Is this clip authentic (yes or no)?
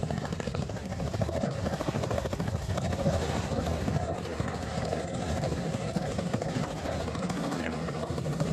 no